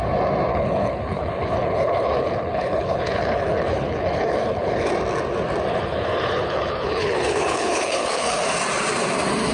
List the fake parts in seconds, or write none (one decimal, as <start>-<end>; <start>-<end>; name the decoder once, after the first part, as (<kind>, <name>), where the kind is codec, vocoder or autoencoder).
0.5-4.9 (codec, HILCodec); 5.7-8.4